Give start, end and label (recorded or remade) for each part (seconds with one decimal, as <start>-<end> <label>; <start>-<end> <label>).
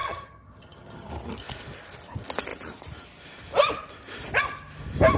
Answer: 0.0-1.1 remade; 1.1-5.2 recorded